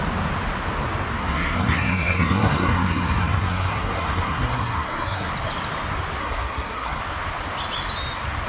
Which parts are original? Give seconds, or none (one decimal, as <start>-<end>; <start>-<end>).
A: 0.0-1.2; 5.3-6.2; 7.0-8.5